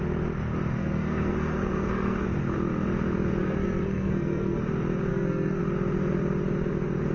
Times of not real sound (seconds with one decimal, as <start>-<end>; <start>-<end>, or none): 0.8-2.2; 3.4-4.6; 5.1-5.6